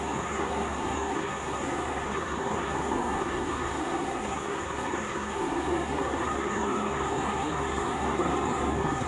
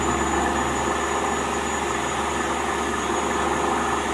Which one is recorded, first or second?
second